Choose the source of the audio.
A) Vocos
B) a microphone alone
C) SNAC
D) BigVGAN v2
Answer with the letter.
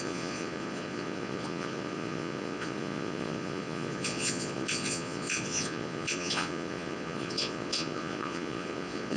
A